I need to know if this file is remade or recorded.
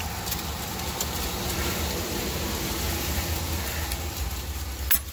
recorded